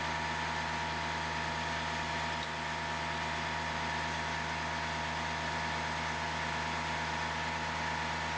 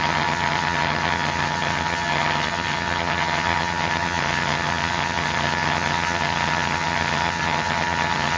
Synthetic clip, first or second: second